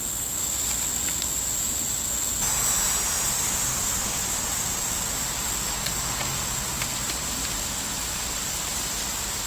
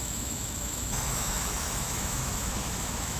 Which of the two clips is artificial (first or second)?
second